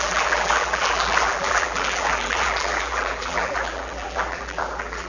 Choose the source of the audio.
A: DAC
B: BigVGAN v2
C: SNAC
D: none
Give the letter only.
B